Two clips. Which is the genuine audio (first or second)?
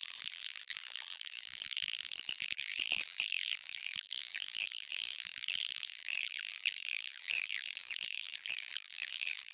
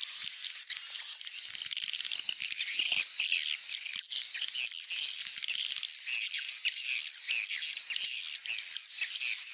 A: second